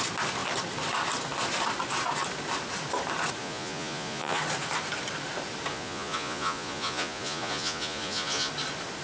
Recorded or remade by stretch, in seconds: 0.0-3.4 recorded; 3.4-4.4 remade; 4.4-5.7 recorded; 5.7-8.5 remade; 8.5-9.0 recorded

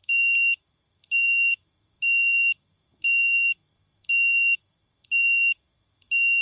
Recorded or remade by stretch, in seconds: 0.0-6.4 remade

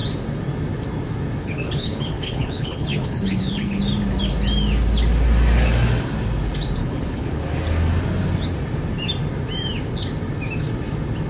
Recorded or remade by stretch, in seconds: 0.0-1.4 recorded; 1.4-3.8 remade; 3.8-6.8 recorded; 6.8-7.4 remade; 7.4-11.3 recorded

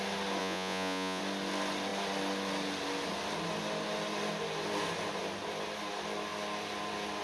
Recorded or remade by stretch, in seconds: 0.0-0.4 recorded; 0.4-1.2 remade; 1.2-7.2 recorded

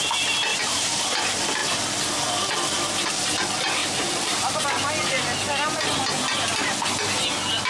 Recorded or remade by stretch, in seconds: 0.0-0.5 recorded; 0.5-1.0 remade; 1.0-3.8 recorded; 3.8-4.7 remade; 4.7-7.7 recorded